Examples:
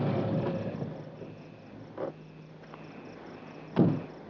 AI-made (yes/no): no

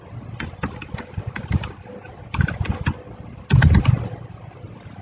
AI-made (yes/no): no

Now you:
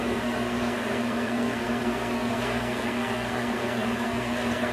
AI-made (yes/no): yes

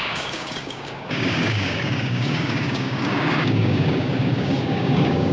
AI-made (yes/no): yes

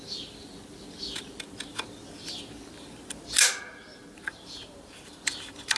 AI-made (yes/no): no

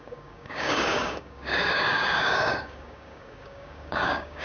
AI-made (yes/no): yes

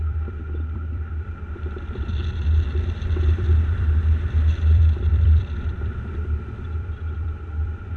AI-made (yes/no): yes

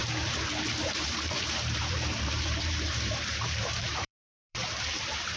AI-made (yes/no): yes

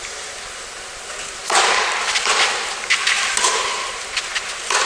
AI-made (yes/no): no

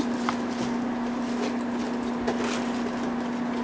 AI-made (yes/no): no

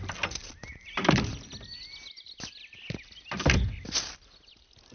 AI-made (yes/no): no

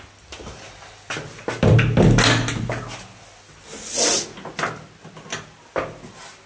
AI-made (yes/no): no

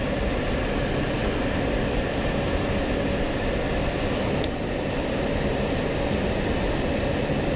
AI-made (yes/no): no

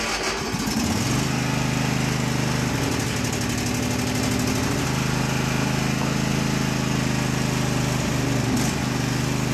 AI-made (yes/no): no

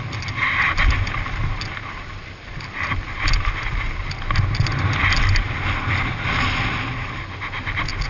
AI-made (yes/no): no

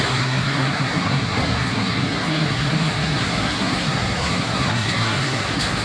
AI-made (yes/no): yes